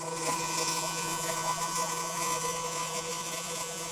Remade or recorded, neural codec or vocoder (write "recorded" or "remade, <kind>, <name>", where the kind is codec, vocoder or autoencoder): remade, vocoder, Vocos